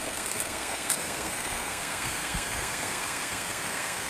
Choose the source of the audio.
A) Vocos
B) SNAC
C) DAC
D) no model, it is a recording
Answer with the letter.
B